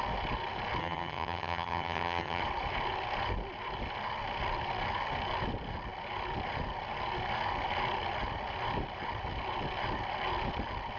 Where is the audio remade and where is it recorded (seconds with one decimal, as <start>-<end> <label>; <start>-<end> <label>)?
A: 0.0-0.8 recorded; 0.8-2.4 remade; 2.4-11.0 recorded